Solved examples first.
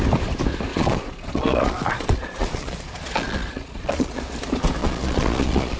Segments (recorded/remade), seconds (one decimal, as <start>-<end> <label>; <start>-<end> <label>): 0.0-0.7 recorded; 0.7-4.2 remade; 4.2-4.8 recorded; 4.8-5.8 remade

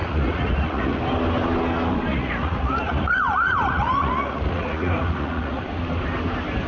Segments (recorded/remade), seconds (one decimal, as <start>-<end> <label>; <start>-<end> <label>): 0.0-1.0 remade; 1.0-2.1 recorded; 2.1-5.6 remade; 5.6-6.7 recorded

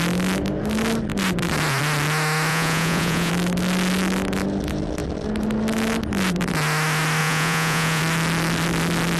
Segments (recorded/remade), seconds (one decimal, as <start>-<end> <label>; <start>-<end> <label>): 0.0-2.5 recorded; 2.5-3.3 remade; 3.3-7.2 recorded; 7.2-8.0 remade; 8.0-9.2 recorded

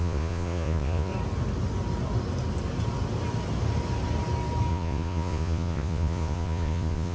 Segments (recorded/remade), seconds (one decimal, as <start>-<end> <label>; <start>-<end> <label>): 0.0-1.1 remade; 1.1-4.7 recorded; 4.7-7.1 remade

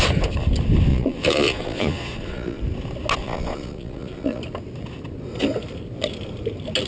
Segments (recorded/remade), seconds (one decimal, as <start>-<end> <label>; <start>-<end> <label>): 0.0-0.9 recorded; 0.9-2.6 remade; 2.6-3.2 recorded; 3.2-4.4 remade; 4.4-6.9 recorded

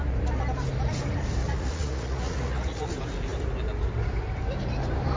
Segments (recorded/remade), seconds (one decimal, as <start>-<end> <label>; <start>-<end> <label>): 0.0-1.4 recorded; 1.4-2.9 remade; 2.9-5.2 recorded